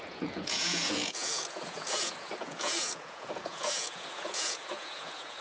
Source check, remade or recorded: remade